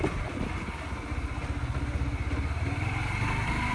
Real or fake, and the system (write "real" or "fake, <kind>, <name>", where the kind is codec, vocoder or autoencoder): real